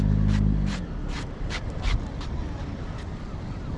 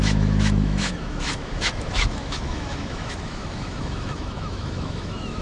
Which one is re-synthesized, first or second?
second